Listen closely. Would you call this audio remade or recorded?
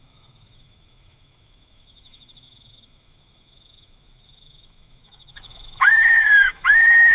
remade